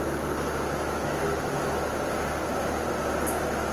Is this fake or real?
real